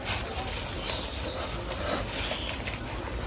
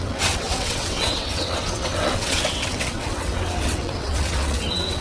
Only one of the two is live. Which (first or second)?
first